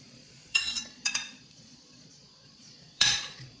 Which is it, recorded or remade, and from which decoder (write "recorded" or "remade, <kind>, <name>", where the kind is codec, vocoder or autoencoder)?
remade, vocoder, Vocos